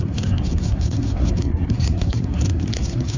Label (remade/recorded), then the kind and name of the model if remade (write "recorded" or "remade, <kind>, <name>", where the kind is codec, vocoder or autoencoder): remade, codec, SNAC